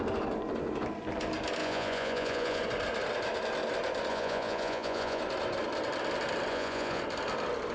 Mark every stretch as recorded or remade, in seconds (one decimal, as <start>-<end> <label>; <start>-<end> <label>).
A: 0.0-1.6 recorded; 1.6-2.6 remade; 2.6-4.1 recorded; 4.1-5.2 remade; 5.2-6.5 recorded; 6.5-7.0 remade; 7.0-7.7 recorded